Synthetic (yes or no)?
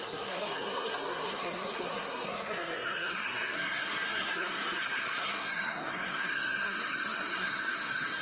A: yes